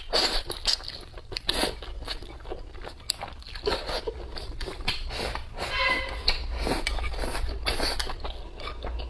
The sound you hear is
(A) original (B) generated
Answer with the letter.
A